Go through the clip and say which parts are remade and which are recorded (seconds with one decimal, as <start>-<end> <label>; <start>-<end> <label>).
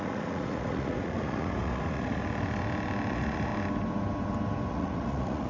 0.0-2.2 remade; 2.2-3.1 recorded; 3.1-3.5 remade; 3.5-4.7 recorded; 4.7-5.5 remade